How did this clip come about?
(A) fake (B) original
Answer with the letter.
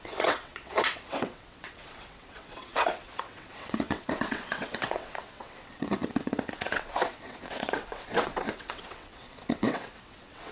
A